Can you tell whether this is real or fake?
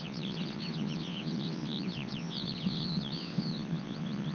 fake